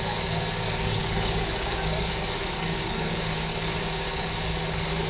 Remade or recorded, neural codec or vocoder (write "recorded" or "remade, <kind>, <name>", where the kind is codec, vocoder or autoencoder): remade, codec, DAC